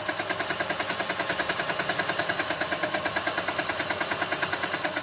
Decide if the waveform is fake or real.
real